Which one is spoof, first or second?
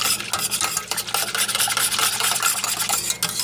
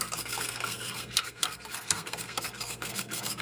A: second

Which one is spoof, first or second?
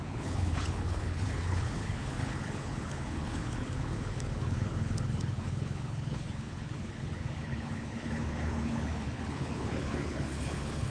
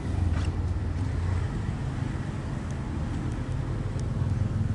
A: first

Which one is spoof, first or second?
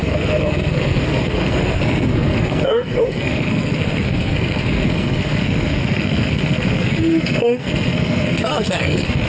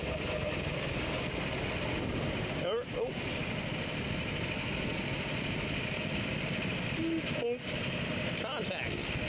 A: first